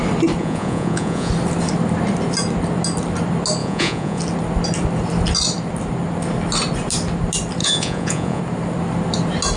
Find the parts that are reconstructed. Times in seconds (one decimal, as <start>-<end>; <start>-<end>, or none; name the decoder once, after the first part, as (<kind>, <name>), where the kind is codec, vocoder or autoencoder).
0.4-1.3 (vocoder, Vocos); 3.6-4.2; 7.6-8.4